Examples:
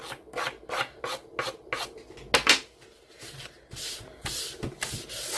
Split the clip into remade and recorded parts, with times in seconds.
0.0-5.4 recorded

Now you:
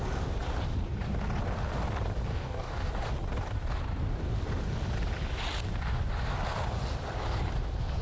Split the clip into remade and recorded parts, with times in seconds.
0.0-2.3 recorded; 2.3-2.9 remade; 2.9-8.0 recorded